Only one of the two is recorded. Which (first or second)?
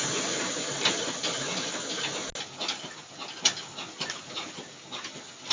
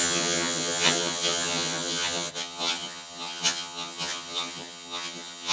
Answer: first